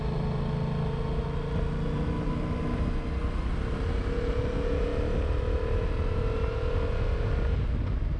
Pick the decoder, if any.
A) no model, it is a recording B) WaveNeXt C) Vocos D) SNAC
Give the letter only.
A